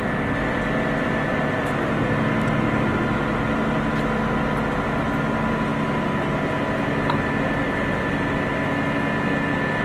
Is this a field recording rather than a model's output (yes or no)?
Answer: yes